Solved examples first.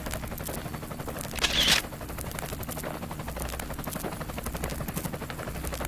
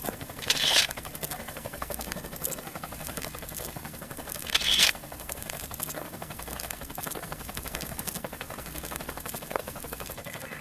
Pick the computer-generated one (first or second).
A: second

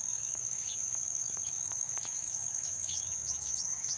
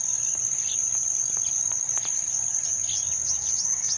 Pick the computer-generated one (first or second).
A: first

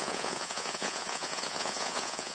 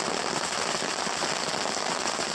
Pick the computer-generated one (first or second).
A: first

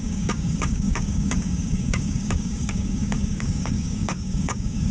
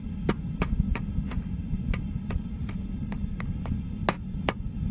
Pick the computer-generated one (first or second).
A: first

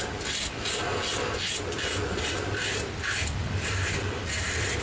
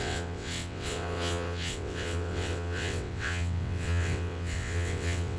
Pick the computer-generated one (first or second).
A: second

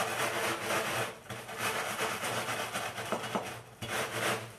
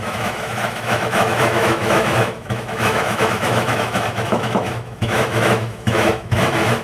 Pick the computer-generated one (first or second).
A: second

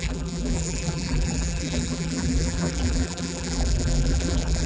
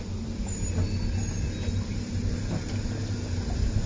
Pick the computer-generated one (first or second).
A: first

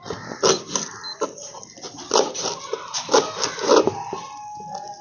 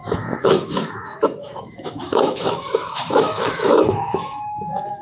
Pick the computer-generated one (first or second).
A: second